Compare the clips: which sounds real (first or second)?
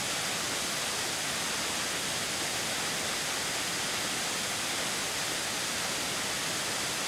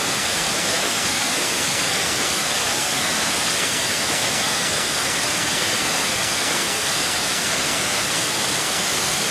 first